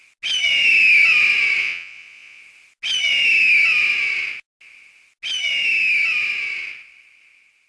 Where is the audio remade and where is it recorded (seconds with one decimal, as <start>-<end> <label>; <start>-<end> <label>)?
0.0-1.6 recorded; 1.6-2.4 remade; 2.4-7.7 recorded